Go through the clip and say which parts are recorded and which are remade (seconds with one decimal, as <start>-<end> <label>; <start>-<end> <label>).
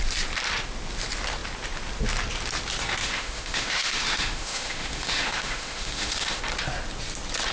0.0-3.0 recorded; 3.0-6.4 remade; 6.4-7.5 recorded